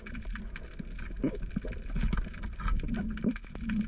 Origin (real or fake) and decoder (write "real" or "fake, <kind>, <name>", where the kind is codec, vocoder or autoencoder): real